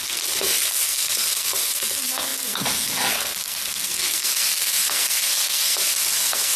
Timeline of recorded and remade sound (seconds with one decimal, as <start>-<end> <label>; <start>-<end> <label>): 0.0-6.6 remade